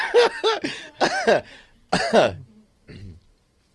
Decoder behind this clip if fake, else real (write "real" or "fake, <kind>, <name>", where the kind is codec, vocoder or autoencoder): real